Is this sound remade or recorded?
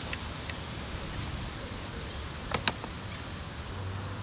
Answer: recorded